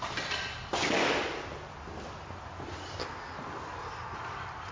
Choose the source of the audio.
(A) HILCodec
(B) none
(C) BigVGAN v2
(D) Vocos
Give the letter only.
B